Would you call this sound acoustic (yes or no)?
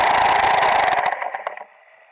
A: yes